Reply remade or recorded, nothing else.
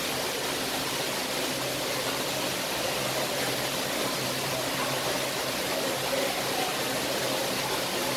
recorded